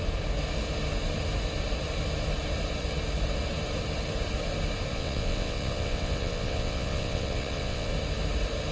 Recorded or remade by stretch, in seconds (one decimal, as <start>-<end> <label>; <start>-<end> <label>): 0.0-4.9 recorded; 4.9-7.9 remade; 7.9-8.7 recorded